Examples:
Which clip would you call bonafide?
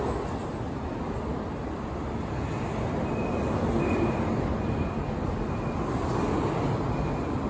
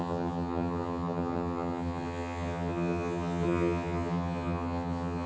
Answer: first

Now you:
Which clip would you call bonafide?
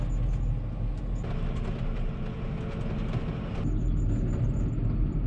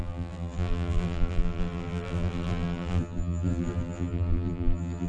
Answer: first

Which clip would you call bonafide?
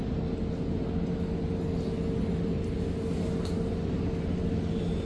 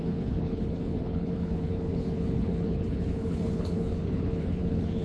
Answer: first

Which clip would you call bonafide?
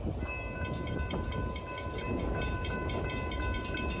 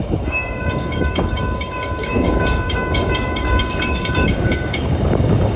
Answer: first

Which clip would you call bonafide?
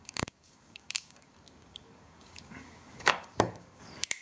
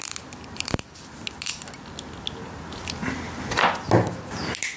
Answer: second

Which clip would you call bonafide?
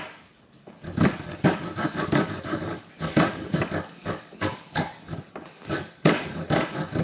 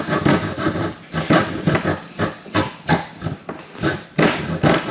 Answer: second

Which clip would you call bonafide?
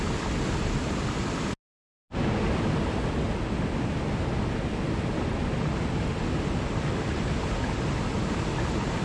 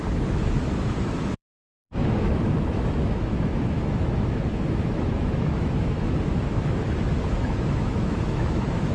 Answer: first